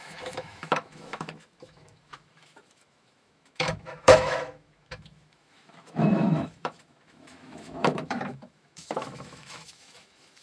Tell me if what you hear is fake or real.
fake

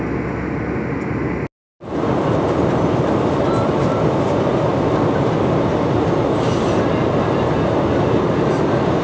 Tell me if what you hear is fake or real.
real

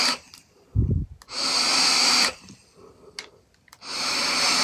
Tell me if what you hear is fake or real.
real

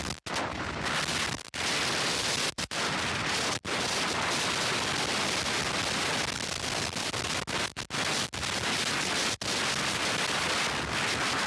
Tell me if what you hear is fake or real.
real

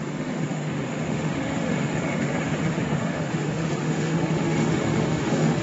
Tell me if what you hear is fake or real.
fake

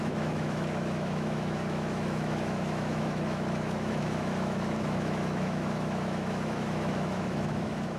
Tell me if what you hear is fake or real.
fake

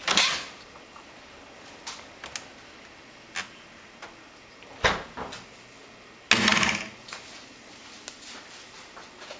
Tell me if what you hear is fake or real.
real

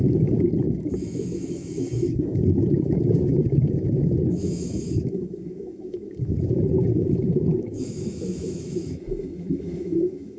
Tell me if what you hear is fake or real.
fake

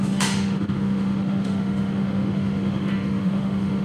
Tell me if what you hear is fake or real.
fake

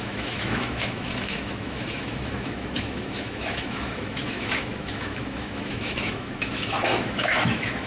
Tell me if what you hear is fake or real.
fake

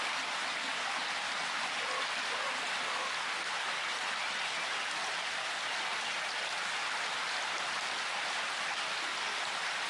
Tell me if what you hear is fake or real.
real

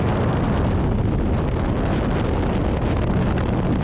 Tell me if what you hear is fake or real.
real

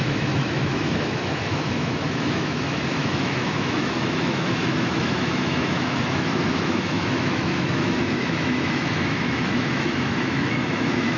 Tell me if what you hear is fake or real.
fake